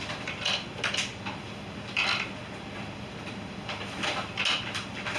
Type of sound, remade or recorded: recorded